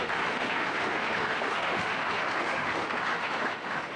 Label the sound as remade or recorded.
remade